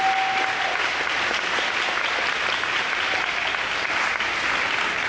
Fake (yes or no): no